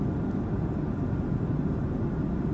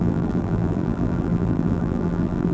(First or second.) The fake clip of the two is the second